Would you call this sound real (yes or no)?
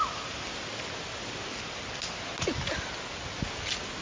yes